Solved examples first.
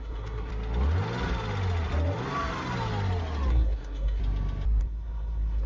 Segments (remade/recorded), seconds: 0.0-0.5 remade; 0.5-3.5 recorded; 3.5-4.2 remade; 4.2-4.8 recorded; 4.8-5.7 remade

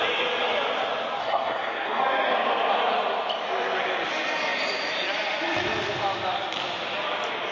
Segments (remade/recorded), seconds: 0.0-1.2 recorded; 1.2-2.0 remade; 2.0-7.5 recorded

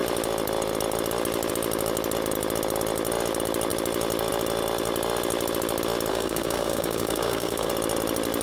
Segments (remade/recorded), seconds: 0.0-6.1 recorded; 6.1-7.7 remade; 7.7-8.4 recorded

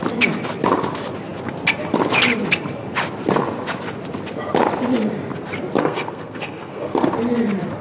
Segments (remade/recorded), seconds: 0.0-5.8 recorded; 5.8-7.1 remade; 7.1-7.8 recorded

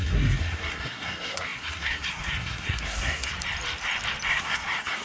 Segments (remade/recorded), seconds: 0.0-3.3 remade; 3.3-4.3 recorded; 4.3-5.0 remade

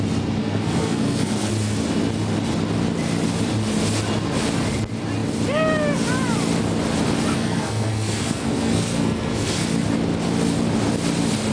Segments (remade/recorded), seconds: 0.0-0.4 recorded; 0.4-1.5 remade; 1.5-7.3 recorded; 7.3-9.7 remade; 9.7-11.5 recorded